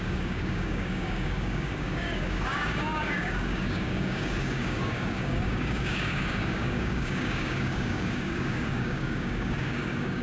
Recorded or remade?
remade